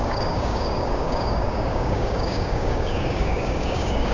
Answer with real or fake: fake